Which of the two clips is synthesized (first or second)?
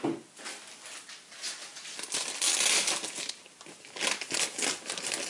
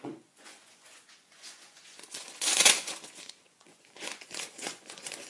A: second